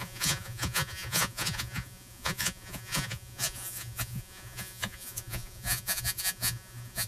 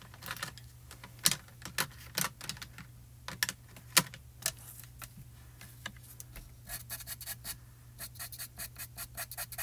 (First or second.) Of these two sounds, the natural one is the second